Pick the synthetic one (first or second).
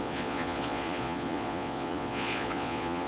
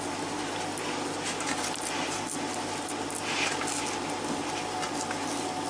first